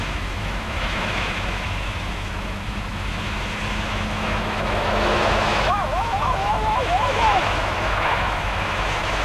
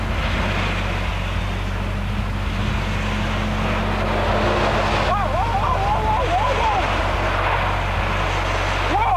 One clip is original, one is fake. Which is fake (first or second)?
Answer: first